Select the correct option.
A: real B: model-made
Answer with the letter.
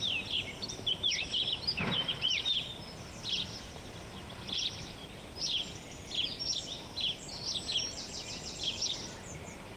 A